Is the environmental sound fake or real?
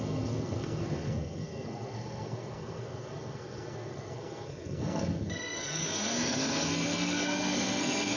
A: fake